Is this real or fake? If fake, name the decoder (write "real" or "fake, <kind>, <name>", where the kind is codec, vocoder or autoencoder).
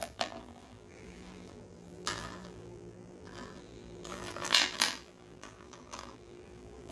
fake, vocoder, BigVGAN v2